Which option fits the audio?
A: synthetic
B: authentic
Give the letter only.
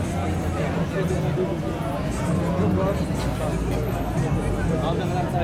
B